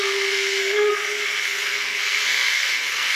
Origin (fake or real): fake